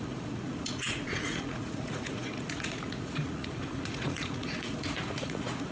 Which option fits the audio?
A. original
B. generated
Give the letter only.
B